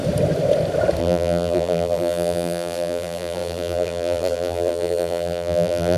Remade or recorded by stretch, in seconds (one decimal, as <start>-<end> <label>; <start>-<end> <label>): 0.0-1.0 recorded; 1.0-6.0 remade

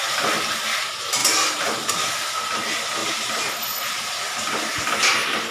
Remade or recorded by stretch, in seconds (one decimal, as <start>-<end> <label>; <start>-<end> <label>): 0.0-3.0 recorded; 3.0-3.5 remade; 3.5-5.5 recorded

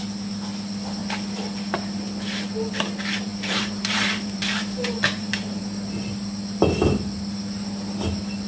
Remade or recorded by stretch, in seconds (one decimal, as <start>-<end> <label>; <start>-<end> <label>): 0.0-3.3 recorded; 3.3-5.6 remade; 5.6-8.5 recorded